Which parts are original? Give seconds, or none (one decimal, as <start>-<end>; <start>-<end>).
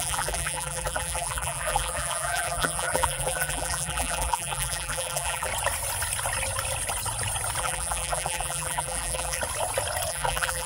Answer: 5.5-7.6; 9.4-10.1